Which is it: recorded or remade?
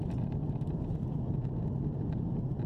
remade